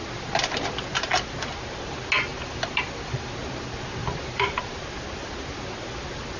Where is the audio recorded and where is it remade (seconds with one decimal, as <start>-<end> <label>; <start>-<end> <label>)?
0.0-2.3 recorded; 2.3-3.3 remade; 3.3-4.0 recorded; 4.0-4.6 remade; 4.6-6.4 recorded